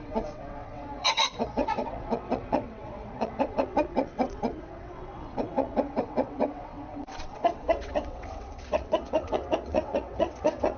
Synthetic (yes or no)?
yes